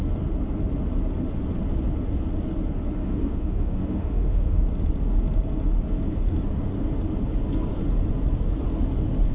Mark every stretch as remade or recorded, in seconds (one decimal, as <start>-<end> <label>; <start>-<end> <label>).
0.0-3.0 recorded; 3.0-4.6 remade; 4.6-9.3 recorded